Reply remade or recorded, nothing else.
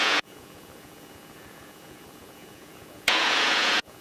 remade